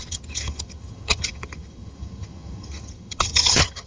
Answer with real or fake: fake